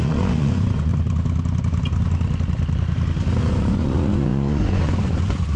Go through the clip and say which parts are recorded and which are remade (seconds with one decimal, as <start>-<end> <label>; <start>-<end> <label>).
0.0-0.9 remade; 0.9-3.4 recorded; 3.4-5.6 remade